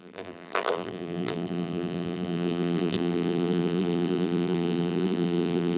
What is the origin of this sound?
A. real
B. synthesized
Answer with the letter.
B